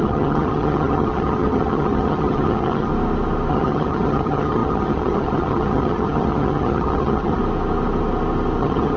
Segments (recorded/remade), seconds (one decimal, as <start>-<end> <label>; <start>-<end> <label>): 0.0-2.9 remade; 2.9-3.5 recorded; 3.5-7.4 remade; 7.4-8.6 recorded; 8.6-9.0 remade